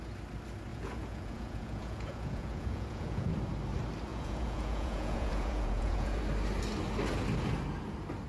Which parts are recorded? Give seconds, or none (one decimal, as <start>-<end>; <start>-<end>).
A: 0.0-0.7; 3.3-4.1; 6.2-8.3